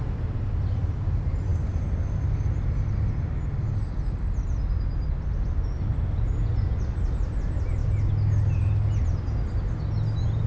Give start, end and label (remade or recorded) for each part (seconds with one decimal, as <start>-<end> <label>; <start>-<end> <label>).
0.0-10.5 recorded